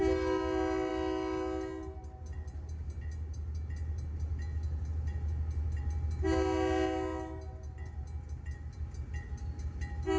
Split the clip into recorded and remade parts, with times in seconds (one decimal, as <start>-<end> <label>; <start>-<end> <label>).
0.0-10.2 recorded